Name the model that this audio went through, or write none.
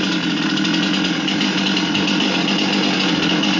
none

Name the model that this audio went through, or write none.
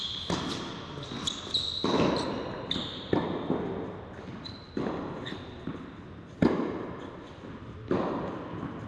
none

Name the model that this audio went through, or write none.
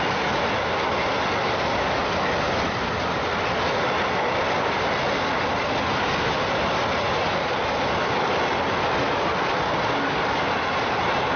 none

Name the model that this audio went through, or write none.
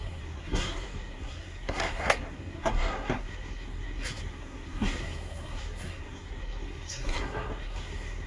codec, SNAC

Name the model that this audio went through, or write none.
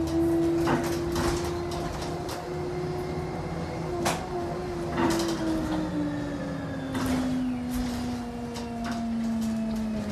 none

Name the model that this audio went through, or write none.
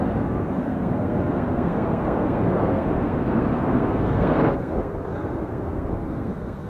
codec, SNAC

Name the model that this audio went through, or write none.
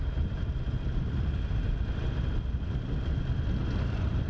none